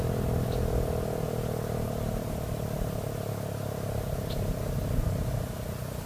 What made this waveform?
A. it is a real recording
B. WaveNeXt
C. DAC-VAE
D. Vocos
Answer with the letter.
A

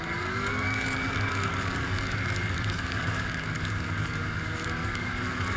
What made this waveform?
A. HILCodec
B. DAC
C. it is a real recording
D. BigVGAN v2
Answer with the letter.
B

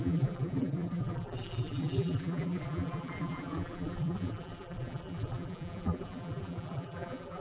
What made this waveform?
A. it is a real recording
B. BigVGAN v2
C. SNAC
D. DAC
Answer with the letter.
B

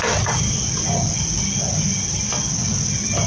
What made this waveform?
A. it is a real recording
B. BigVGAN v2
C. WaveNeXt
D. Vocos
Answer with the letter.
A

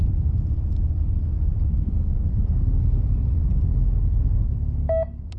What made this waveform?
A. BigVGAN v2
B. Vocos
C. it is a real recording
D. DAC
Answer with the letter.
C